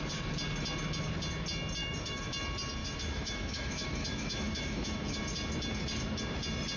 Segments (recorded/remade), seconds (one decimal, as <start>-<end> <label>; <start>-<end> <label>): 0.0-1.8 recorded; 1.8-2.3 remade; 2.3-2.8 recorded; 2.8-5.2 remade; 5.2-6.8 recorded